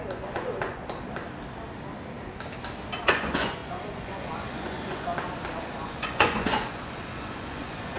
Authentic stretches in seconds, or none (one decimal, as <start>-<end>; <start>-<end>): 0.8-3.0; 5.1-5.8

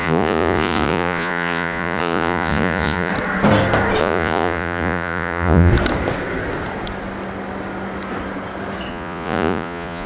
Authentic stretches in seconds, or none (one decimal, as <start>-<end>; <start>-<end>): 3.1-4.0; 5.7-8.9

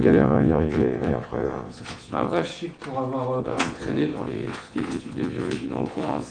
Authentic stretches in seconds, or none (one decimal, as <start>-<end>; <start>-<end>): 2.5-3.4

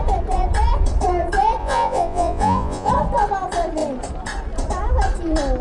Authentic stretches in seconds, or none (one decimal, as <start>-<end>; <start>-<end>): 0.0-1.6; 2.9-5.6

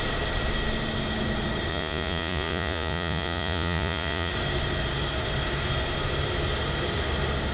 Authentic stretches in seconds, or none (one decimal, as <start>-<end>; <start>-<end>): 0.0-1.7; 4.3-7.5

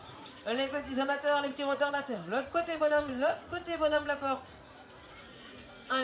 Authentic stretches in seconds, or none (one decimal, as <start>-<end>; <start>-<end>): 0.7-1.5